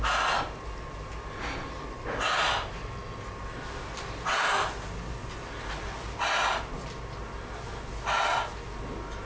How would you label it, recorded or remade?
recorded